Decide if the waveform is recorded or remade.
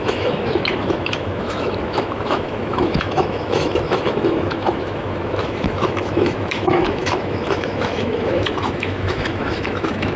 remade